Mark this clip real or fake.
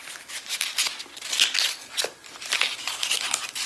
real